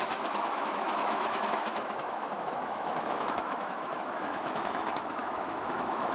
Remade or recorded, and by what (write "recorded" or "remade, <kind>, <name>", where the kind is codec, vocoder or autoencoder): remade, autoencoder, DAC-VAE